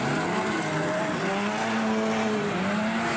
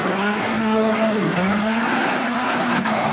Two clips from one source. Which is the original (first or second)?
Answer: first